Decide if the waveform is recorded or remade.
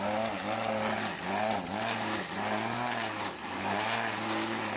recorded